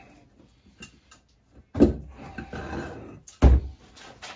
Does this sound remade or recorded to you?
recorded